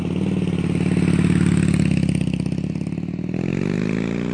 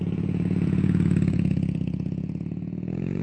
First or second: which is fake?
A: second